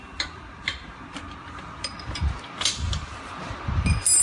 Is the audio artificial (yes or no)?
no